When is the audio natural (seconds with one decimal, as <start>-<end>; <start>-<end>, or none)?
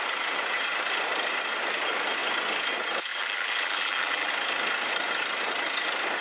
0.0-3.1; 4.3-6.2